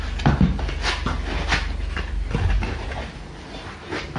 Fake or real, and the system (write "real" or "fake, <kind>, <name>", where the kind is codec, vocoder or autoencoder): real